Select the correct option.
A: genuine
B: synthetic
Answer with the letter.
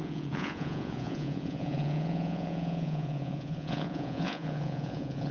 B